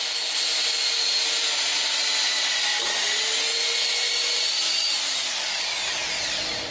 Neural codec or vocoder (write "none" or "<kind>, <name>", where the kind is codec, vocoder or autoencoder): none